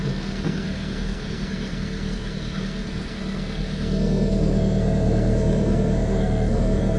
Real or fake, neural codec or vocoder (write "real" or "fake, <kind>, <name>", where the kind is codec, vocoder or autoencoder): fake, codec, SNAC